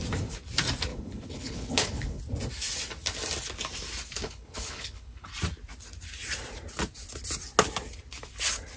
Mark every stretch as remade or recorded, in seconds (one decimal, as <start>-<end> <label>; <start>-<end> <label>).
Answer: 0.0-0.9 recorded; 0.9-2.2 remade; 2.2-4.2 recorded; 4.2-5.3 remade; 5.3-8.8 recorded